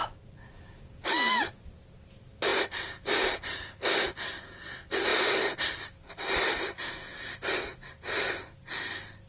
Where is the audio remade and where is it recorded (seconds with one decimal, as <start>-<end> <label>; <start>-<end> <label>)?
0.0-9.3 recorded